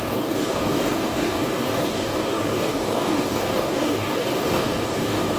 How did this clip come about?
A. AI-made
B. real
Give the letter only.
A